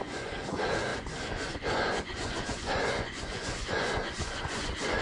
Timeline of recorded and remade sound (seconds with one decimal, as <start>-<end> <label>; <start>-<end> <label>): 0.0-5.0 remade

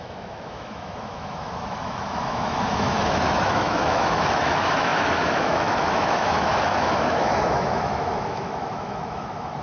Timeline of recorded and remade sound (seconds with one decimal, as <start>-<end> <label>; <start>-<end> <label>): 0.0-9.6 remade